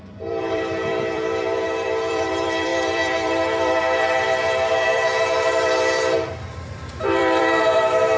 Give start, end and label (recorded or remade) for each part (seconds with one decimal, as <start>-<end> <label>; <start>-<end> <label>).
0.0-8.2 remade